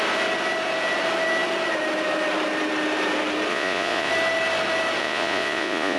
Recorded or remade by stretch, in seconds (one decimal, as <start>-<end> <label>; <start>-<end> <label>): 0.0-3.5 recorded; 3.5-4.1 remade; 4.1-5.0 recorded; 5.0-6.0 remade